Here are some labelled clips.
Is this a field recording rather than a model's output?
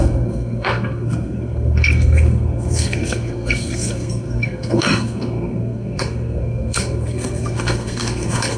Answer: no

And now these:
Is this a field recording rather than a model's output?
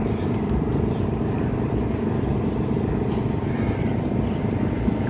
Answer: no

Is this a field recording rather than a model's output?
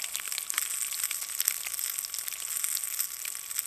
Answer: yes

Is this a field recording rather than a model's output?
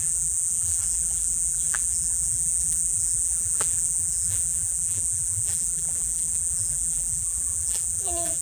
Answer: no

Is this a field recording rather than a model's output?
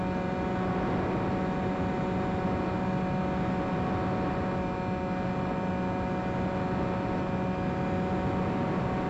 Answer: yes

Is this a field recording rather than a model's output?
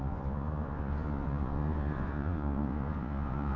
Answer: no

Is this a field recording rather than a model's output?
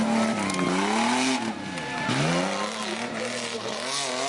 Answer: yes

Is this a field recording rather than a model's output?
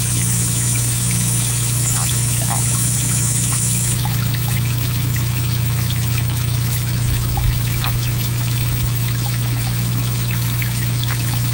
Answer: no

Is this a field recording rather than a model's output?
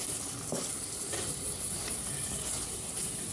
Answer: no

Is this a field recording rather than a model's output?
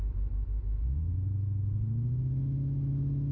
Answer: yes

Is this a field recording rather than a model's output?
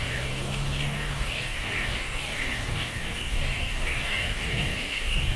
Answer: no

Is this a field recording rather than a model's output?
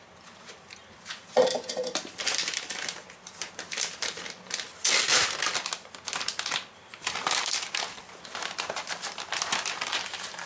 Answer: no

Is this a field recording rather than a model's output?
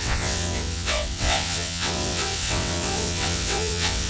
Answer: no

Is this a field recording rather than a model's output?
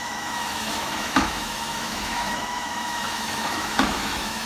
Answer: no